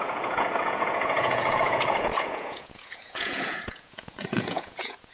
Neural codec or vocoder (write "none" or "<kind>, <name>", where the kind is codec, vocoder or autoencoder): vocoder, Vocos